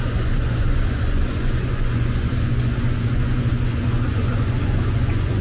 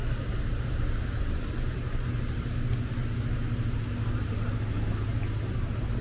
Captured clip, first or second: second